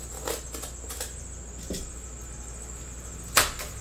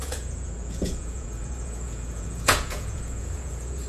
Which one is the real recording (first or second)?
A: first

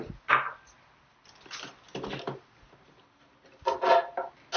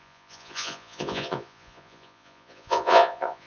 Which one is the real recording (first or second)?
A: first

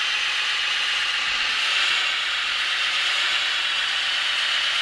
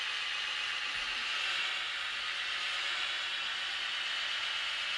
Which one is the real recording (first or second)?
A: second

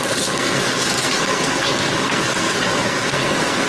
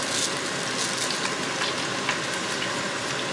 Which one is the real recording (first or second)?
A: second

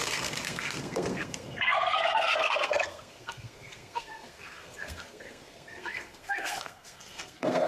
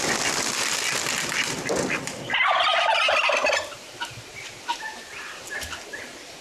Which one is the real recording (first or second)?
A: second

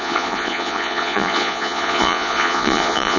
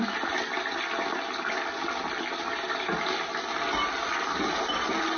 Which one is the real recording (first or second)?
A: second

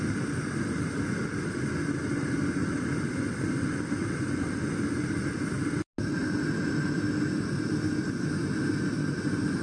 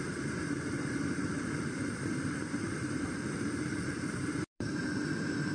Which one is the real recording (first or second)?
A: first